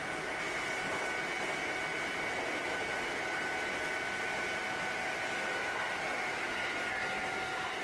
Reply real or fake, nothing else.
real